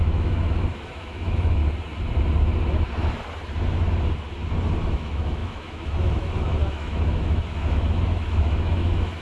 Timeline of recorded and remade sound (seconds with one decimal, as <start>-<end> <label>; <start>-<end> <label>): 0.0-1.6 remade; 1.6-4.9 recorded; 4.9-9.2 remade